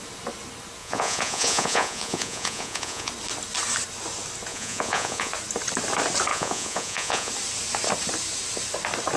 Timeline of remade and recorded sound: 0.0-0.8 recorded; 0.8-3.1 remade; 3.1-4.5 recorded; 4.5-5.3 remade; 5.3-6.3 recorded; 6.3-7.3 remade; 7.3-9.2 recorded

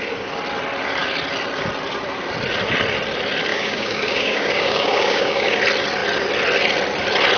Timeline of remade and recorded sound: 0.0-3.5 recorded; 3.5-5.6 remade; 5.6-7.4 recorded

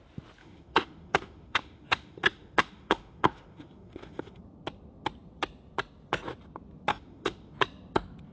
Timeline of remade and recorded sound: 0.0-0.4 recorded; 0.4-4.4 remade; 4.4-6.9 recorded; 6.9-7.6 remade; 7.6-8.3 recorded

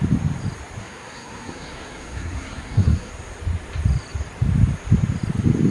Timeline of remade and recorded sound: 0.0-0.8 recorded; 0.8-3.1 remade; 3.1-5.7 recorded

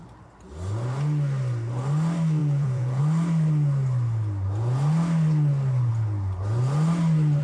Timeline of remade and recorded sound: 0.0-2.4 recorded; 2.4-3.0 remade; 3.0-7.4 recorded

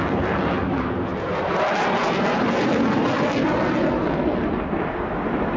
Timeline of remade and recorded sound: 0.0-5.6 recorded

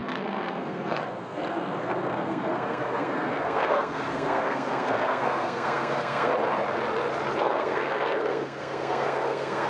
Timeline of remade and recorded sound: 0.0-6.3 remade; 6.3-7.4 recorded; 7.4-9.7 remade

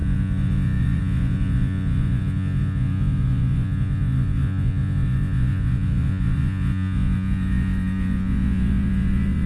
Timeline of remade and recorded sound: 0.0-9.5 remade